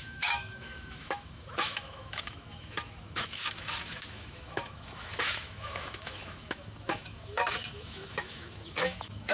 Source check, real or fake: fake